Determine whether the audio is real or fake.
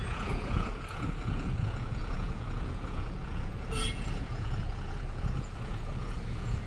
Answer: fake